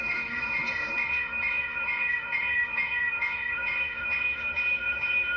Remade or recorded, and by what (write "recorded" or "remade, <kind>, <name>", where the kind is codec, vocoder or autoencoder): remade, autoencoder, DAC-VAE